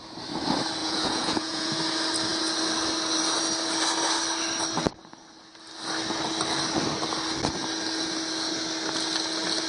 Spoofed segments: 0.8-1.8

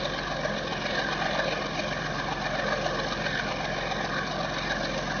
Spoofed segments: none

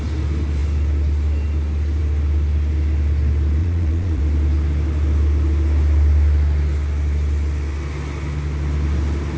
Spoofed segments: 3.6-4.2

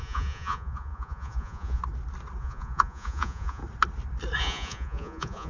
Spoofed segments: 0.0-1.8; 2.4-3.6; 4.4-5.5